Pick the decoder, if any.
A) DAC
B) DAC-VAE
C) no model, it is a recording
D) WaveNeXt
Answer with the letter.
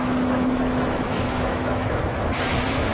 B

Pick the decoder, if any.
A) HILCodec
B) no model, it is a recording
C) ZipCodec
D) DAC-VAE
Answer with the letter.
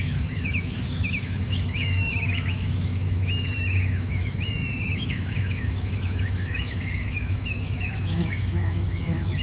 D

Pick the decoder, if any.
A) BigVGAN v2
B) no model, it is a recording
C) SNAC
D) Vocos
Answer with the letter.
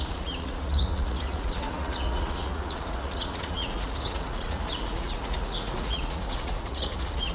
D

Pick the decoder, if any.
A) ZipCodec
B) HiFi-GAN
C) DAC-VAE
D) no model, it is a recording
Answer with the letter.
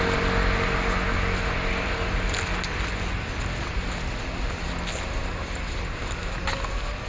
D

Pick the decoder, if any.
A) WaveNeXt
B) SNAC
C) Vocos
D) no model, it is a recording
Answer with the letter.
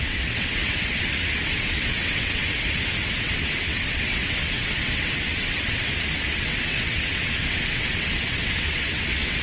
A